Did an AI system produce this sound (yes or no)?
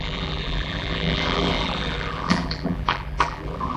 yes